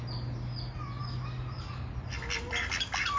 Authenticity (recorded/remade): recorded